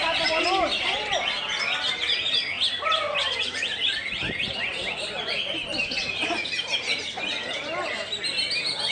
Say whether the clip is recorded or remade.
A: recorded